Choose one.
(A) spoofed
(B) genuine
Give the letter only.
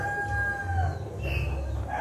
B